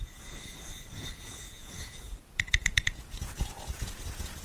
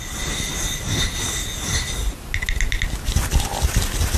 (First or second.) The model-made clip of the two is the first